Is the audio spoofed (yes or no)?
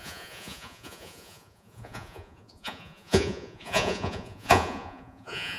yes